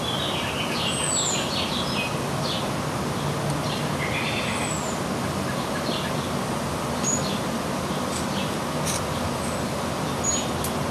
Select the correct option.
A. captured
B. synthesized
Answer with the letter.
A